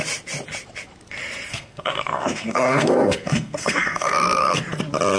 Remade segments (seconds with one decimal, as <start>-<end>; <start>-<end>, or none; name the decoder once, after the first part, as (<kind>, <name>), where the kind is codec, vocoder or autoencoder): 1.5-4.6 (codec, SNAC)